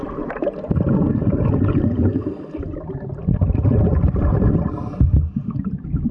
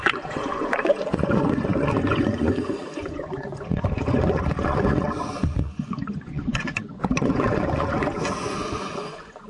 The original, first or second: first